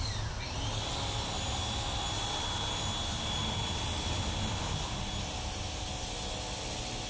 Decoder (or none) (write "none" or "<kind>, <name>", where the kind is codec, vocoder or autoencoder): none